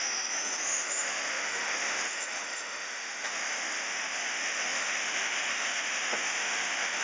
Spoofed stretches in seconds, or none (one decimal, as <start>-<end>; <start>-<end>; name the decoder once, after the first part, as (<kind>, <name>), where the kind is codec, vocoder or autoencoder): 0.0-7.0 (autoencoder, DAC-VAE)